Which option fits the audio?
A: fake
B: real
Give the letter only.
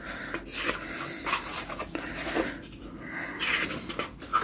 B